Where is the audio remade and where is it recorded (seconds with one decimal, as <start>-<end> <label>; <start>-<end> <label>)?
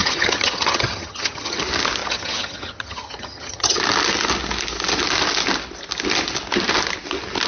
0.0-1.6 remade; 1.6-2.0 recorded; 2.0-3.8 remade; 3.8-7.5 recorded